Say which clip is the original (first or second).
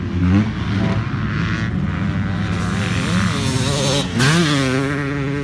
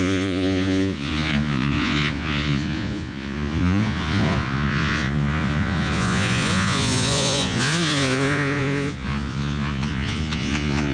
first